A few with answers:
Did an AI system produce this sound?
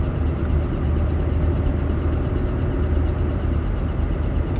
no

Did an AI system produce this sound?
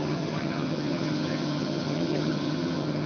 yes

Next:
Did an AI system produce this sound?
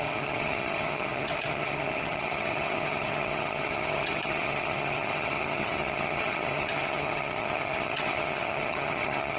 yes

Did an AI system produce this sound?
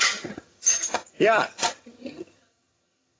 yes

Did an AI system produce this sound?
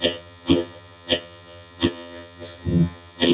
yes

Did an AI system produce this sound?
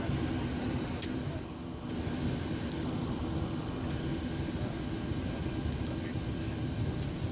no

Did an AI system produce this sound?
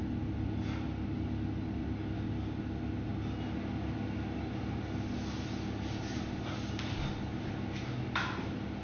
no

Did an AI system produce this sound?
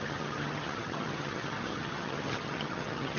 yes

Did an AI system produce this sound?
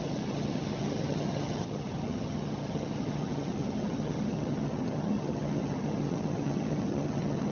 yes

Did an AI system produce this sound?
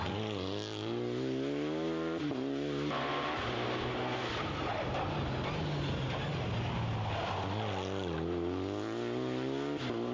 no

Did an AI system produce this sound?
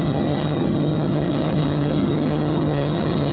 yes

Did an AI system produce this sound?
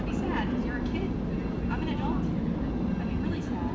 no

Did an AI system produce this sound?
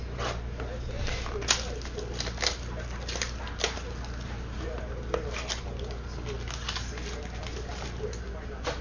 no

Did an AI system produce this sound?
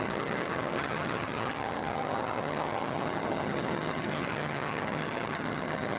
yes